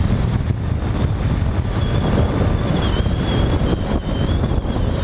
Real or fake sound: real